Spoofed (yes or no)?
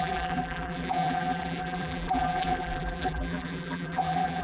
yes